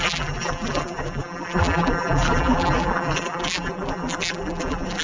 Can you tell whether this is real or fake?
fake